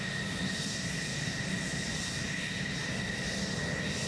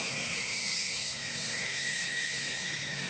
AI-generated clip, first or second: second